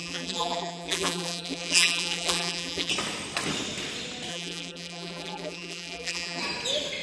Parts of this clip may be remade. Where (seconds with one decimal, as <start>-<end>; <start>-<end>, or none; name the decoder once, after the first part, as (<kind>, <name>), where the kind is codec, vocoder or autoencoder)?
0.0-2.9 (vocoder, BigVGAN v2); 4.3-6.4